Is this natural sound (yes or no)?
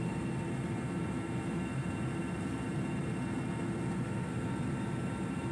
no